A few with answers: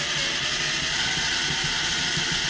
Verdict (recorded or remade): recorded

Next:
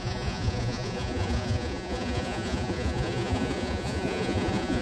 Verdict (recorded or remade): remade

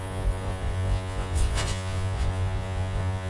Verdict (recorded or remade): remade